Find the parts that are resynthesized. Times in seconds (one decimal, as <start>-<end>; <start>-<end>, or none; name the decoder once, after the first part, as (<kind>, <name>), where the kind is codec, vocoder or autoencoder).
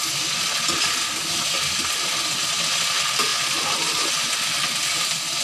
none